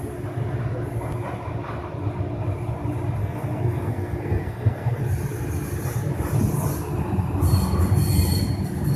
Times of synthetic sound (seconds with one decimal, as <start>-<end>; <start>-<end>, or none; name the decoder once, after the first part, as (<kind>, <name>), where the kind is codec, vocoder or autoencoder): 3.2-5.0 (codec, SNAC)

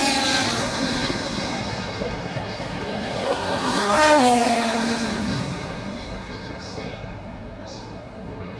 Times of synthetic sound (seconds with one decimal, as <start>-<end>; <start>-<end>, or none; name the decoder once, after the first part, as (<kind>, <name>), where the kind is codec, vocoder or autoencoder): 0.6-8.6 (codec, SNAC)

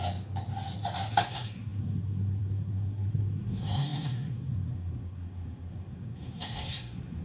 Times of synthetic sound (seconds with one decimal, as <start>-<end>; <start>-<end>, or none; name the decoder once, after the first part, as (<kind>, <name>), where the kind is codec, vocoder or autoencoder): 1.2-7.2 (codec, SNAC)

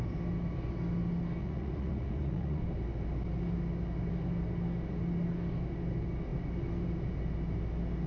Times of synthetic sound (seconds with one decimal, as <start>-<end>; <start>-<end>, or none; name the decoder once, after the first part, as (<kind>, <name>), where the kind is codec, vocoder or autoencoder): 1.4-2.6 (vocoder, Vocos)

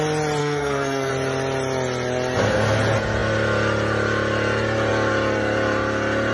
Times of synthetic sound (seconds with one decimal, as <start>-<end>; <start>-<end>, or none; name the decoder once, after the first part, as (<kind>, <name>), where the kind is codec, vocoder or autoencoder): 0.4-1.1 (codec, SNAC)

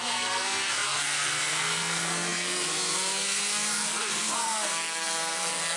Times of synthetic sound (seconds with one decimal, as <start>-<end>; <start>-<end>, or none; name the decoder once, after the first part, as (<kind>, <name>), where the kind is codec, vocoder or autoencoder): 0.0-5.8 (codec, SNAC)

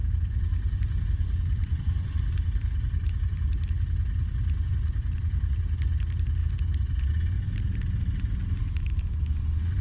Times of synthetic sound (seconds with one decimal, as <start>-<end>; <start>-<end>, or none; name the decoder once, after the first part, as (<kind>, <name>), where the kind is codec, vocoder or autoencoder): 1.6-2.1 (vocoder, BigVGAN v2); 4.7-6.0